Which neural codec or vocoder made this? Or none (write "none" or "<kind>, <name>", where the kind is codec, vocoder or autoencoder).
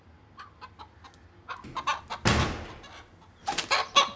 none